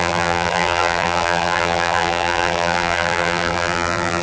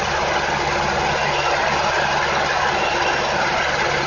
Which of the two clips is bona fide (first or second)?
second